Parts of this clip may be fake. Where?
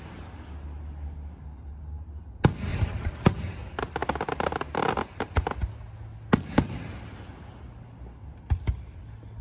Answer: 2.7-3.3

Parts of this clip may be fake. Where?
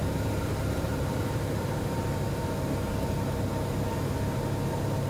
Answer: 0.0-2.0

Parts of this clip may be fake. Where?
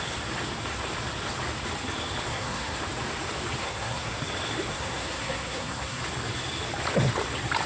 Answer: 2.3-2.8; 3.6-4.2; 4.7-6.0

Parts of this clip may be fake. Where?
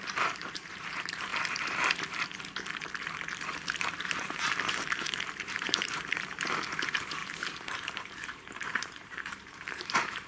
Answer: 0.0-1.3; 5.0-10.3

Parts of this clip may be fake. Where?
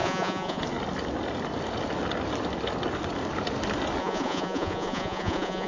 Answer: 0.0-0.6; 4.0-5.7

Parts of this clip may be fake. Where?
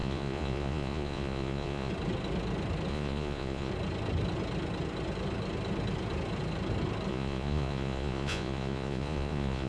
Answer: 0.0-1.9; 2.9-3.7; 7.1-9.7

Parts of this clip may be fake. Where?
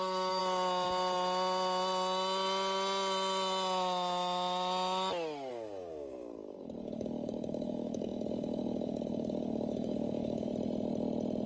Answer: 0.0-0.4; 5.5-10.5